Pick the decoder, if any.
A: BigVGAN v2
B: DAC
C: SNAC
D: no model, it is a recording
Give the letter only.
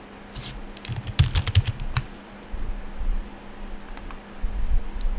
D